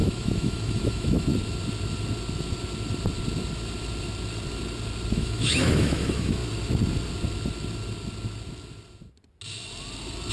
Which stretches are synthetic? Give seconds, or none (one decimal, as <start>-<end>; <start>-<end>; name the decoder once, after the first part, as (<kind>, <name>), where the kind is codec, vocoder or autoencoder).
0.0-1.3 (autoencoder, DAC-VAE); 5.1-6.4